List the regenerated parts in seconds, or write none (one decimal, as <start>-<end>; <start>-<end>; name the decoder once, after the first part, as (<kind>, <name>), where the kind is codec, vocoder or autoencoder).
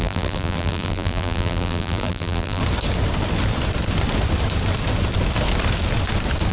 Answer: 0.0-2.6 (vocoder, BigVGAN v2)